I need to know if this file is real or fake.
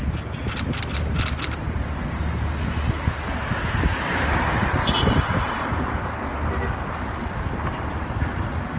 real